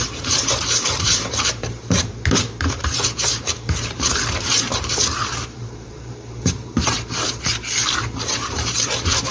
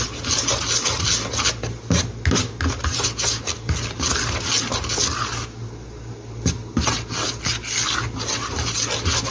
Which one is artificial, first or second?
first